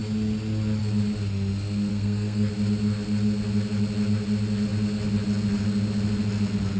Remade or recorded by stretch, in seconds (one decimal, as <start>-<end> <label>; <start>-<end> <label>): 0.0-1.9 recorded; 1.9-2.5 remade; 2.5-6.8 recorded